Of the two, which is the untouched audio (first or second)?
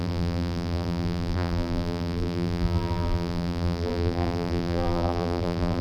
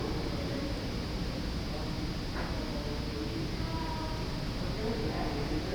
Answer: second